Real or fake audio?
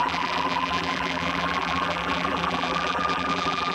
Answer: fake